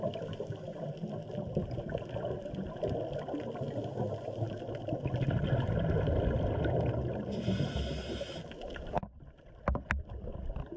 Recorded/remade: recorded